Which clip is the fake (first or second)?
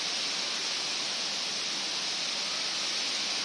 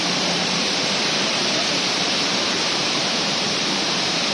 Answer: second